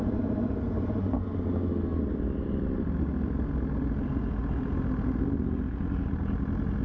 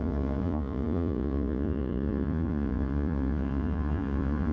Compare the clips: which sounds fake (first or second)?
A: second